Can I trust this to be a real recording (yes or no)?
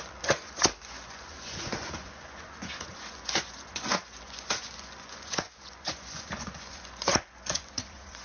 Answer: no